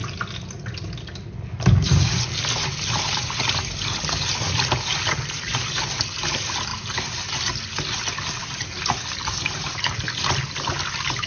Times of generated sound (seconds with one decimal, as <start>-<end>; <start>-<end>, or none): 2.9-6.7; 8.4-11.3